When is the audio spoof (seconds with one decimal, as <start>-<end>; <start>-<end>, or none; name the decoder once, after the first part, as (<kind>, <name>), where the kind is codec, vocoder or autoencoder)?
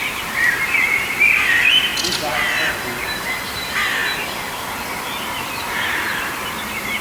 0.0-1.9 (vocoder, BigVGAN v2); 3.2-7.0